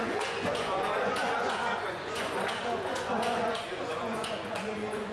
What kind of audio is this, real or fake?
fake